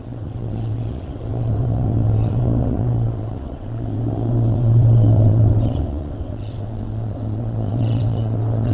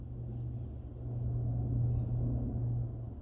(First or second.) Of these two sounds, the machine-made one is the first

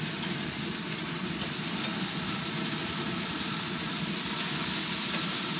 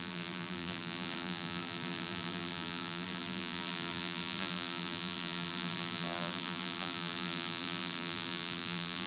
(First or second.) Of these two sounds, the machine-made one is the second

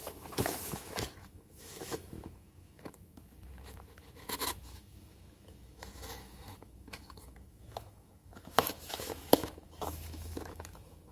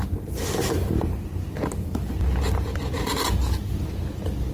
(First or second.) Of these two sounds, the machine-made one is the first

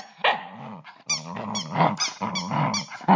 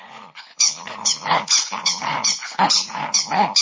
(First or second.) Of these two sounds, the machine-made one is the second